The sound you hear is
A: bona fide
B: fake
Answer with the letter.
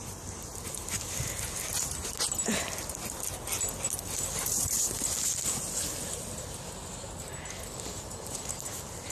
A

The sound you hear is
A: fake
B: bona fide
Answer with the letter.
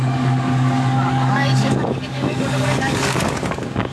A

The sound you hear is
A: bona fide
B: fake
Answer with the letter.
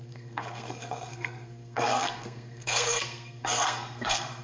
B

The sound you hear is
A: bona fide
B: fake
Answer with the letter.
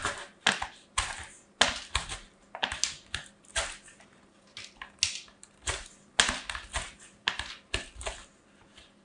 A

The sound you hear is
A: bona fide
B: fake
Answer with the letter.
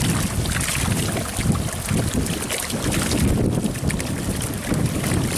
A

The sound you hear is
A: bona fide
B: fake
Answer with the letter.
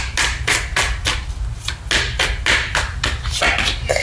A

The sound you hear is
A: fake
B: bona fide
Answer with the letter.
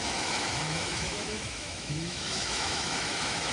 A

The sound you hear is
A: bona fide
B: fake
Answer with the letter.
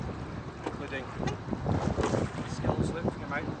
A